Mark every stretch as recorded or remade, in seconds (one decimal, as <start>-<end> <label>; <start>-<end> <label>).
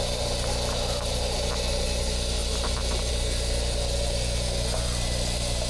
0.0-5.7 recorded